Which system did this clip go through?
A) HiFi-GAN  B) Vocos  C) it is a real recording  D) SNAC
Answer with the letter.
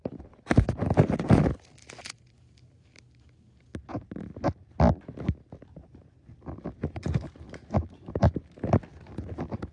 C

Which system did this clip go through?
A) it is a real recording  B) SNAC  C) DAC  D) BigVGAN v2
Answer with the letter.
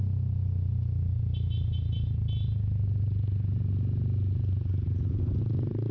A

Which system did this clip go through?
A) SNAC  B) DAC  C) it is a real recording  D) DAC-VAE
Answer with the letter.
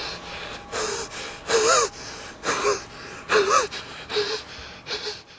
C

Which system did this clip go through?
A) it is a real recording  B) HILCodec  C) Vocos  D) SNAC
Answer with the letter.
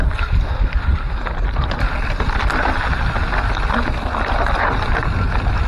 A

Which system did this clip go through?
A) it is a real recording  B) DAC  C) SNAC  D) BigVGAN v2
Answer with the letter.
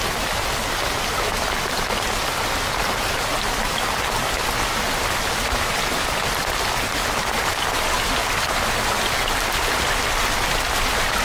A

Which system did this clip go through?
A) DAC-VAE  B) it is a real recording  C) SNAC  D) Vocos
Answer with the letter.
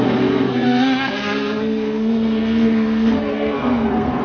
C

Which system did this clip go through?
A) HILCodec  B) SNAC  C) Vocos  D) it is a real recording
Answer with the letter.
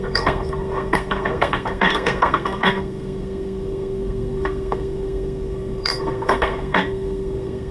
B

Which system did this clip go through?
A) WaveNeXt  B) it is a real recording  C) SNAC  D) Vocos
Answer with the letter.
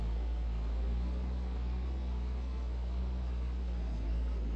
C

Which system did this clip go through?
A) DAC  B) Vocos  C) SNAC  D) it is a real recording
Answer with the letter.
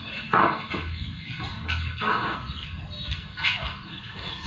C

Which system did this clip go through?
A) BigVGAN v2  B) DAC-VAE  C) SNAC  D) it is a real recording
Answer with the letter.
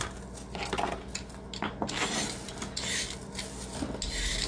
D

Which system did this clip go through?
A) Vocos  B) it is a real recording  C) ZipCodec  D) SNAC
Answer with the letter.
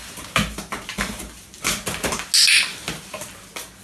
B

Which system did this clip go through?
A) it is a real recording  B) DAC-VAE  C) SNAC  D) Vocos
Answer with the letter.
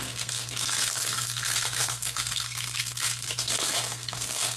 C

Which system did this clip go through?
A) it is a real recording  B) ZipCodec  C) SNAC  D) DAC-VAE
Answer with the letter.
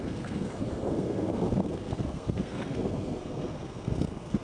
C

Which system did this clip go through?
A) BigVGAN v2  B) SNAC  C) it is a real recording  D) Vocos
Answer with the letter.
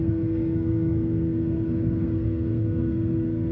B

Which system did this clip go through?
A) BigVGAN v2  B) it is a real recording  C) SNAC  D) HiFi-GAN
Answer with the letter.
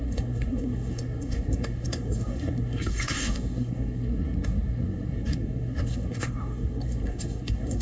C